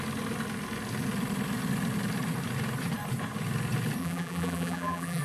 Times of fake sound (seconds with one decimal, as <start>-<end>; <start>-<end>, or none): 4.0-5.2